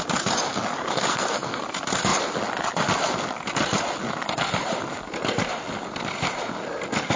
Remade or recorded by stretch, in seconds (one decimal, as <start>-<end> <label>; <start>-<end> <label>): 0.0-0.8 recorded; 0.8-1.6 remade; 1.6-7.2 recorded